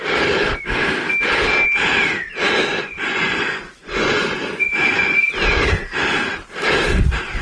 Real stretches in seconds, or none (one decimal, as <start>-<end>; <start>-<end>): 0.0-2.7; 5.3-7.4